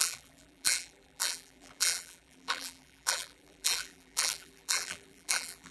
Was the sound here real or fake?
fake